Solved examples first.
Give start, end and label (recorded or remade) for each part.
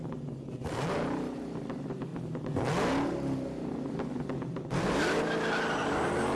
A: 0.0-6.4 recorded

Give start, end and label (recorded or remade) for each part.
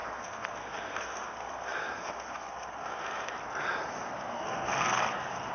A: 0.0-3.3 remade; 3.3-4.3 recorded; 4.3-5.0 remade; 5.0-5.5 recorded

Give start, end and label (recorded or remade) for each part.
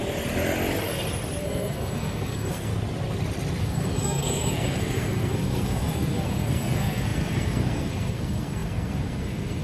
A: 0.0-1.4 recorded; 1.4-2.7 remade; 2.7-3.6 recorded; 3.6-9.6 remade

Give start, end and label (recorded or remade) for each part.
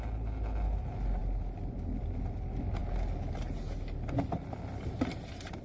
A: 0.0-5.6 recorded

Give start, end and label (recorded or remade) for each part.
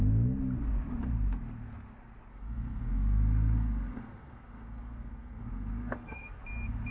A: 0.0-2.3 recorded; 2.3-6.4 remade; 6.4-6.9 recorded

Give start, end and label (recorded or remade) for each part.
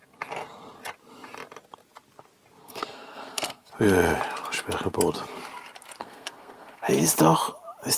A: 0.0-2.6 recorded; 2.6-3.7 remade; 3.7-6.0 recorded; 6.0-6.9 remade; 6.9-8.0 recorded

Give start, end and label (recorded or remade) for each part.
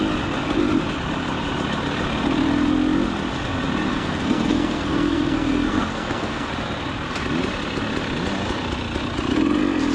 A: 0.0-3.9 recorded; 3.9-6.5 remade; 6.5-9.9 recorded